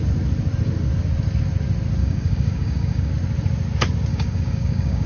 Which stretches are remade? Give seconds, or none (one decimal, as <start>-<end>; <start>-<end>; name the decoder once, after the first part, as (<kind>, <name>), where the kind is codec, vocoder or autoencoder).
2.0-3.1 (codec, DAC); 4.1-5.1